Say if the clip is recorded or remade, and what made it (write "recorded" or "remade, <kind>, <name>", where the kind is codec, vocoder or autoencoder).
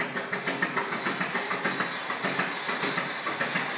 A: recorded